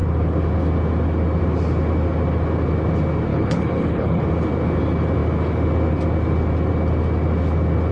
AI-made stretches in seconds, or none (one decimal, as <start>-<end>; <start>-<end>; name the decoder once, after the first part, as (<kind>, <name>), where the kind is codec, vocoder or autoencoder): 3.3-4.2 (codec, HILCodec)